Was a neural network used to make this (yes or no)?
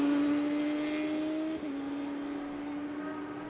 no